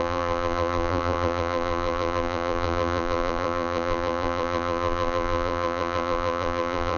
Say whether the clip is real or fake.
fake